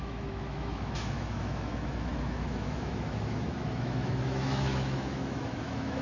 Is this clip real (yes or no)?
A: no